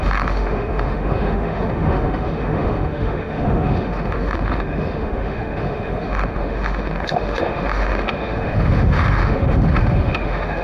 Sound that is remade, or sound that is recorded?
remade